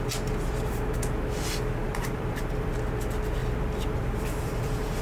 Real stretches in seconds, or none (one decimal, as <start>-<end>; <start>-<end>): 0.0-1.8; 2.8-3.4